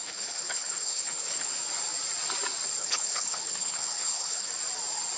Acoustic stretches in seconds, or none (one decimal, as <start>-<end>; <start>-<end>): 1.5-2.8; 4.5-5.2